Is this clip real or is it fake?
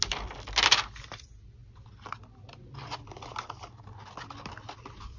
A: real